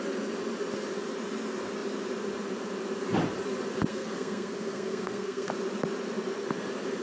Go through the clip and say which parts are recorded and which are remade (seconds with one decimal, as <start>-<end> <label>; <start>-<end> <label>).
0.0-3.9 recorded; 3.9-5.5 remade; 5.5-7.0 recorded